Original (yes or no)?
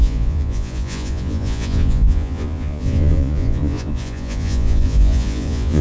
no